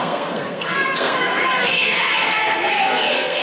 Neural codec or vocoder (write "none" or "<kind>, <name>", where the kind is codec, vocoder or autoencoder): codec, SNAC